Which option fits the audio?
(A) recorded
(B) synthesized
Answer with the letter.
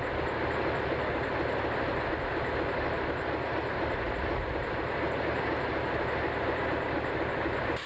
A